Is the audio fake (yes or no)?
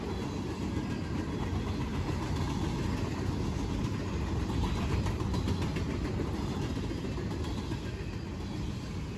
no